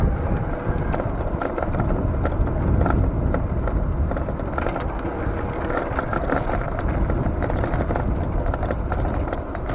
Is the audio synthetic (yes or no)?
no